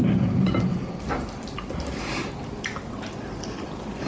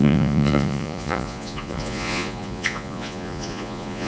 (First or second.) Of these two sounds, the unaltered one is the first